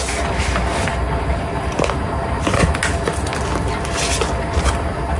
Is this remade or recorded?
recorded